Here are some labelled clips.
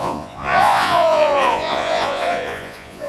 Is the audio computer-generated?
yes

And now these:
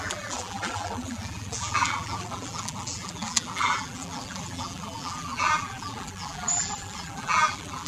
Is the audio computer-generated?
yes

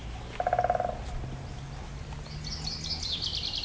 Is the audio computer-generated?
no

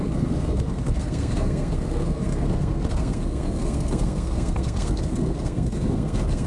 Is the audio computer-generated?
yes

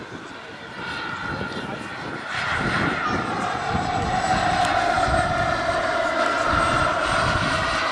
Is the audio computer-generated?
no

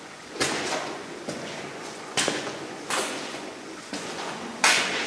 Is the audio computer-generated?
yes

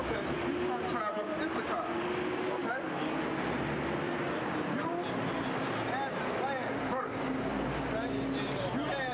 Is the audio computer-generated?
no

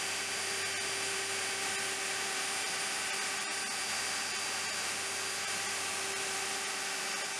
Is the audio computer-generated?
no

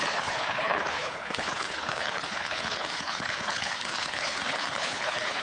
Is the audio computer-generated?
yes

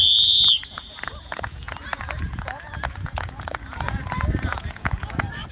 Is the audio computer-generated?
yes